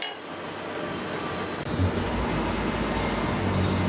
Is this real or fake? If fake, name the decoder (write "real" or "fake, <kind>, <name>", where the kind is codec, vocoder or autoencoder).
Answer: real